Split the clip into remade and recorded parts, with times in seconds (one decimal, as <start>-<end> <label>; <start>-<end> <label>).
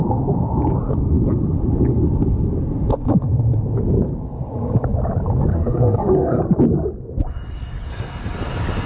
0.0-5.5 recorded; 5.5-6.4 remade; 6.4-8.9 recorded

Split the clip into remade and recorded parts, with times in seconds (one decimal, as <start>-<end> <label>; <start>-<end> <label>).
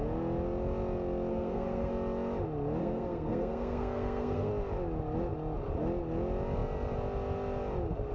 0.0-1.3 recorded; 1.3-1.9 remade; 1.9-2.8 recorded; 2.8-4.5 remade; 4.5-8.1 recorded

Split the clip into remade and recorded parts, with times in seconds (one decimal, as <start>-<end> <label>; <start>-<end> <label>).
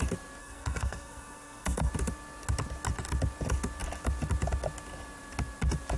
0.0-0.4 recorded; 0.4-1.9 remade; 1.9-6.0 recorded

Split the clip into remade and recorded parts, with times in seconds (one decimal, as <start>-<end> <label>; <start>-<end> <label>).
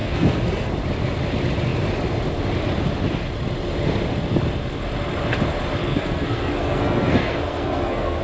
0.0-0.7 remade; 0.7-5.8 recorded; 5.8-8.2 remade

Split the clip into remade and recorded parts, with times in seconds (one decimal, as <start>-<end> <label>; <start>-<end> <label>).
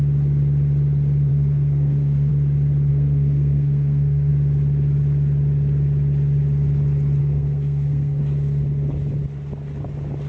0.0-1.3 recorded; 1.3-2.3 remade; 2.3-2.9 recorded; 2.9-4.3 remade; 4.3-7.2 recorded; 7.2-8.2 remade; 8.2-10.3 recorded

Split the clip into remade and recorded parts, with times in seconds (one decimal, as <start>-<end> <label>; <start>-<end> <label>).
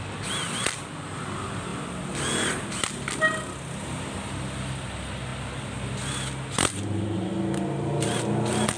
0.0-8.8 recorded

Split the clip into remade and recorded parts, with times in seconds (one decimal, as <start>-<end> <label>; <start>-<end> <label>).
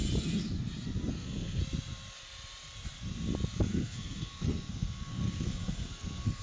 0.0-1.1 recorded; 1.1-1.6 remade; 1.6-3.7 recorded; 3.7-6.4 remade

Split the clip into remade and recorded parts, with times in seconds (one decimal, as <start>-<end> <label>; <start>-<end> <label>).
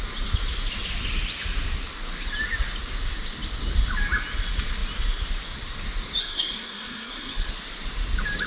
0.0-6.2 recorded; 6.2-7.5 remade; 7.5-8.5 recorded